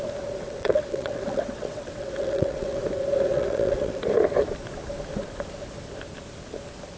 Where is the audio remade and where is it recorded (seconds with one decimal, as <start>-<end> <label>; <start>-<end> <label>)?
0.0-0.4 recorded; 0.4-2.8 remade; 2.8-3.3 recorded; 3.3-4.0 remade; 4.0-7.0 recorded